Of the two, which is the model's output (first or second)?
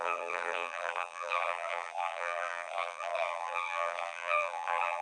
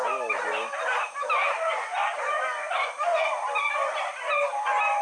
first